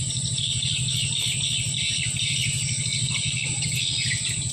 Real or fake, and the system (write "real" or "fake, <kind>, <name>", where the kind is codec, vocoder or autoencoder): real